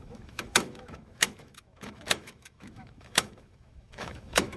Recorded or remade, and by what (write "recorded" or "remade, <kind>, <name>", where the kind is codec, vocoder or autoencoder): remade, autoencoder, DAC-VAE